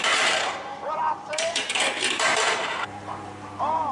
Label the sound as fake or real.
fake